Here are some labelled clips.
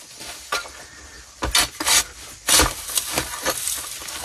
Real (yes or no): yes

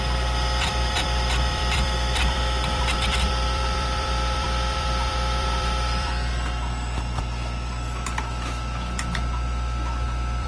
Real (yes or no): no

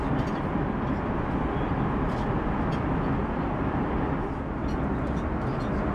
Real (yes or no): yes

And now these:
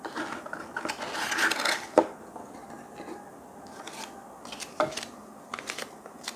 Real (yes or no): yes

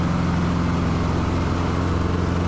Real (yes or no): yes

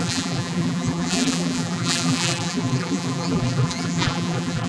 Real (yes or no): no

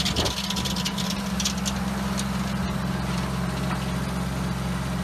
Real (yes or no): yes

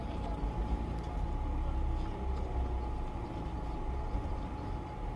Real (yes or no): yes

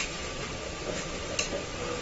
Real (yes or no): yes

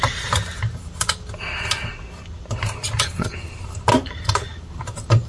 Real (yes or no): yes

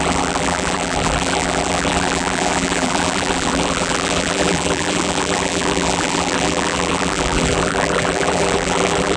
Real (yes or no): no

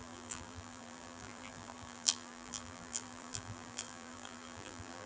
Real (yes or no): no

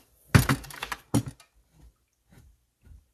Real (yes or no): yes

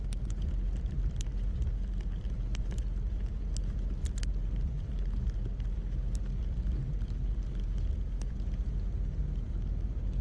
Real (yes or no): no